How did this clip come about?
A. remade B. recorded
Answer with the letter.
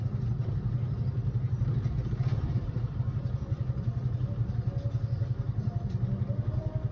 B